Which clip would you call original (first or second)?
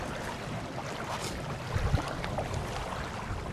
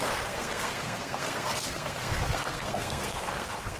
first